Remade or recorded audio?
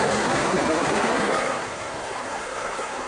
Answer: remade